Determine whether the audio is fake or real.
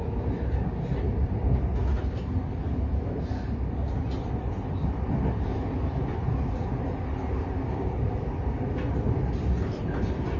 real